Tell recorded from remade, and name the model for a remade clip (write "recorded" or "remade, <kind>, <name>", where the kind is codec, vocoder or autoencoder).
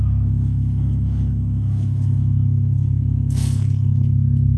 remade, codec, SNAC